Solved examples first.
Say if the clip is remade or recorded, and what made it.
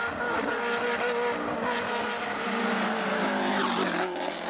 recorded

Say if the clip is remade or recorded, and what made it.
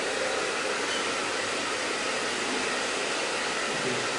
recorded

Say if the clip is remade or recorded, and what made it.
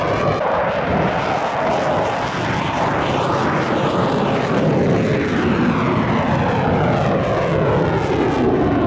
recorded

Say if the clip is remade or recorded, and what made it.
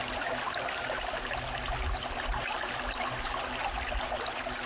recorded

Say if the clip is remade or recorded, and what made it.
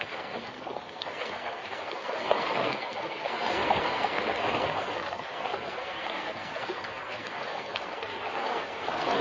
remade, codec, SNAC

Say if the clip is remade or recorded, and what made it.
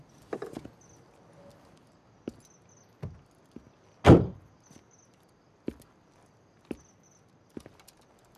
recorded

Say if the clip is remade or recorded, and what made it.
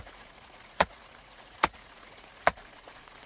remade, vocoder, Vocos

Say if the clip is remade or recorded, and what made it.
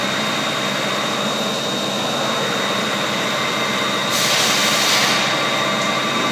recorded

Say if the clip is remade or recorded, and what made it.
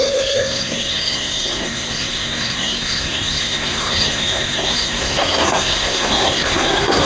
remade, codec, SNAC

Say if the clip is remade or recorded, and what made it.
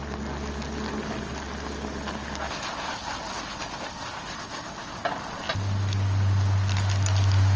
recorded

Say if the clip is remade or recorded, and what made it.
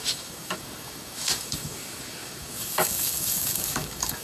remade, codec, DAC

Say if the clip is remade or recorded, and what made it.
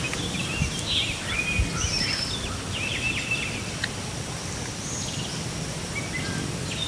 recorded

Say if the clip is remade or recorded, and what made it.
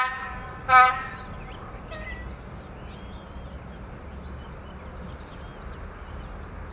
recorded